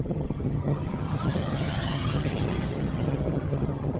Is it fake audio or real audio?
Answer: fake